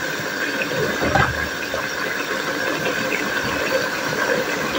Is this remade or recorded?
recorded